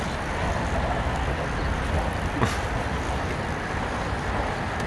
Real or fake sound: real